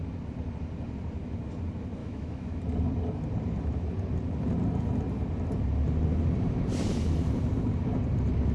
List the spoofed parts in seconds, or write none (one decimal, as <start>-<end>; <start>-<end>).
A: 2.0-2.6